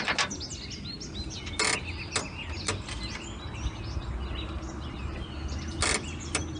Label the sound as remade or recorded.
recorded